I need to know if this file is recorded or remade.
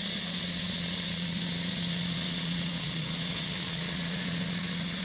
remade